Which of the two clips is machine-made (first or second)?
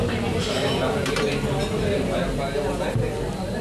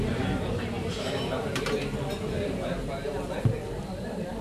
second